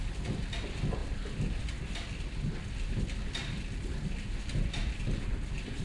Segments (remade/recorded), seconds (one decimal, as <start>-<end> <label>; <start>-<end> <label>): 0.0-1.0 recorded; 1.0-1.6 remade; 1.6-5.8 recorded